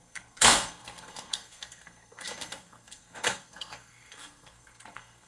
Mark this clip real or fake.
fake